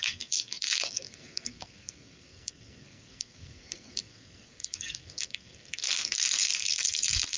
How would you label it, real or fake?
fake